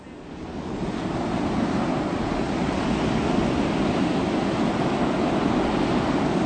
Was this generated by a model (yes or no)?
no